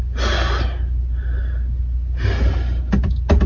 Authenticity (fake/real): real